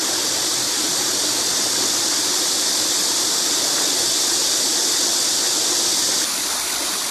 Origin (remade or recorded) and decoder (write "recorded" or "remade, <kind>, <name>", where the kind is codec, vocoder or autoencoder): recorded